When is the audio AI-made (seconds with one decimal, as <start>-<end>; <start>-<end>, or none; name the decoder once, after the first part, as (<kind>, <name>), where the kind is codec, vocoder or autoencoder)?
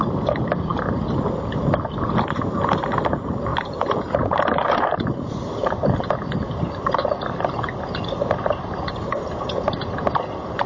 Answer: 3.5-5.1 (vocoder, BigVGAN v2); 5.6-9.2